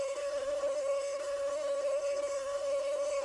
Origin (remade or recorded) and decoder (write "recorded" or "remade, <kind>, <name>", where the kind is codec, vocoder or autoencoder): remade, codec, SNAC